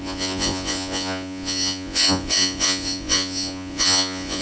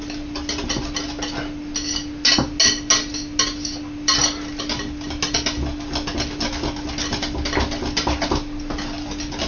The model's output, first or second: first